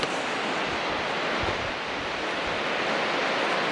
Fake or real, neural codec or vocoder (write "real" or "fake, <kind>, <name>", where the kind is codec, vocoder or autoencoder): real